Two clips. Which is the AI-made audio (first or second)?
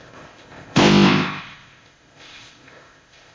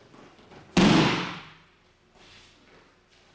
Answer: first